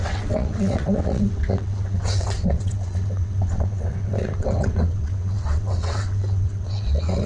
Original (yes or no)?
no